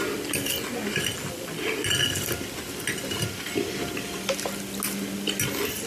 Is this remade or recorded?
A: recorded